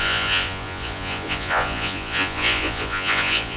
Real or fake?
fake